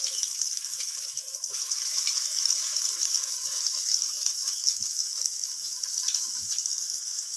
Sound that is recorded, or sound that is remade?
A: remade